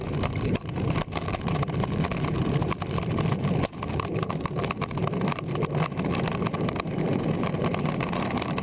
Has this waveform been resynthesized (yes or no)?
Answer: yes